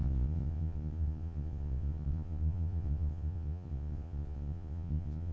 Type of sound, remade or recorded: remade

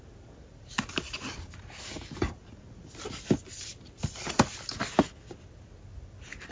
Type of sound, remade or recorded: recorded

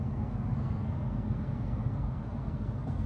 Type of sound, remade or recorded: remade